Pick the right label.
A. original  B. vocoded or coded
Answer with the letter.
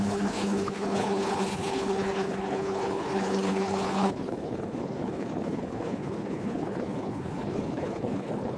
B